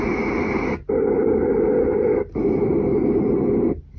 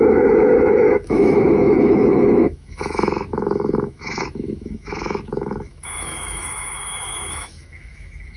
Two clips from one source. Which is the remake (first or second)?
second